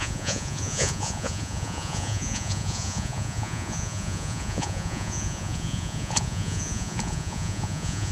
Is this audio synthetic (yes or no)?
yes